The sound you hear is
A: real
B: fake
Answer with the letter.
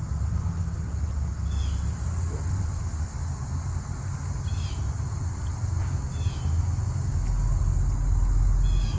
A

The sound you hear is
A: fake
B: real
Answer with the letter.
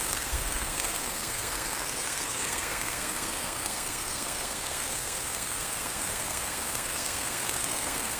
A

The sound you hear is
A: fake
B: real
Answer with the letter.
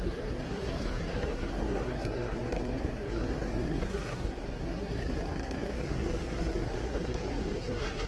A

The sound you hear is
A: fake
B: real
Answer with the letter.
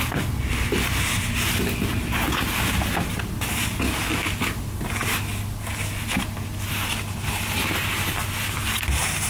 B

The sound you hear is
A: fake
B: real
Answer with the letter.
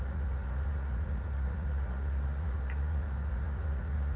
A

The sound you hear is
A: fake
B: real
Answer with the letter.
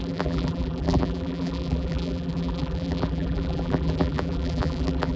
A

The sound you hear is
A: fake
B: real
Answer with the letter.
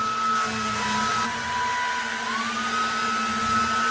B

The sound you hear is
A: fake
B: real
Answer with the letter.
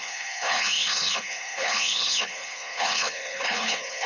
A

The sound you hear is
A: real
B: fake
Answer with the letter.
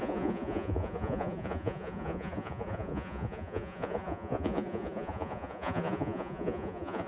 B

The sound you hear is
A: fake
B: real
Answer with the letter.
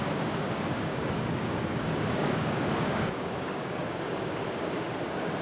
A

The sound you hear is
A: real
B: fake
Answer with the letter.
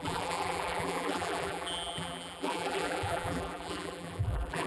B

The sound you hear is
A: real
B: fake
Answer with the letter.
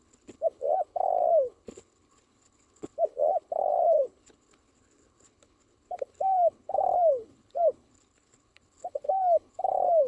B